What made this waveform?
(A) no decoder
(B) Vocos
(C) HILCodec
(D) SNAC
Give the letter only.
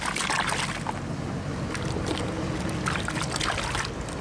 A